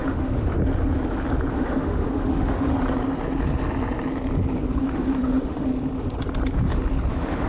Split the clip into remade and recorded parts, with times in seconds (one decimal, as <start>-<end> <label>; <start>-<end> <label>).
0.0-0.6 remade; 0.6-1.5 recorded; 1.5-2.7 remade; 2.7-4.8 recorded; 4.8-5.7 remade; 5.7-7.1 recorded; 7.1-7.5 remade